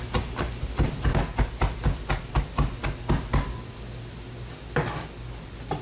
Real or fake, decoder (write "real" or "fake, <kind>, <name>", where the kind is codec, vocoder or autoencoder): real